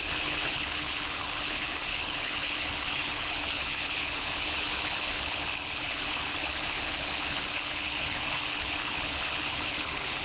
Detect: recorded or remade remade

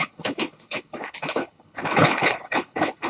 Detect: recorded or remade remade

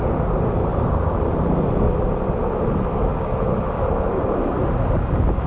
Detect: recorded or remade recorded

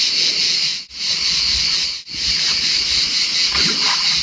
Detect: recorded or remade recorded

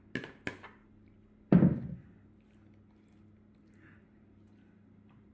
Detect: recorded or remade recorded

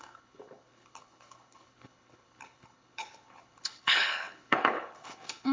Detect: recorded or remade remade